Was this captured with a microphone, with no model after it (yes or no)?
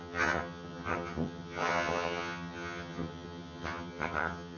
no